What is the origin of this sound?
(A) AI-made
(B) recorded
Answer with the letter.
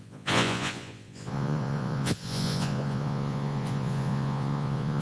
A